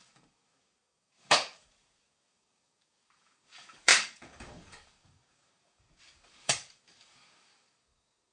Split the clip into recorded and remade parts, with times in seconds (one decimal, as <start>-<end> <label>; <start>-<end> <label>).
0.0-8.3 remade